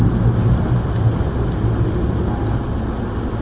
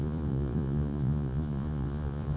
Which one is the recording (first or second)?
first